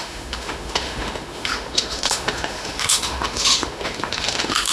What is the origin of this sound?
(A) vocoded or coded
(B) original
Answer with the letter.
A